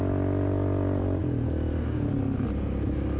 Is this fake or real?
real